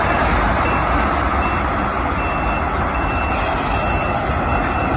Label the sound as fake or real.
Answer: real